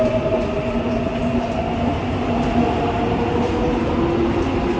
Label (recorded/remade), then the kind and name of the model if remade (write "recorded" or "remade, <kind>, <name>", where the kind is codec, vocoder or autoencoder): recorded